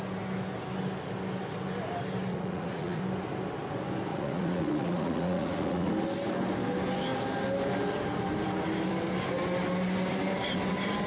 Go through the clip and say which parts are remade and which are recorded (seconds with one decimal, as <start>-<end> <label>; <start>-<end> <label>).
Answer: 0.0-2.3 recorded; 2.3-3.0 remade; 3.0-4.1 recorded; 4.1-5.9 remade; 5.9-11.1 recorded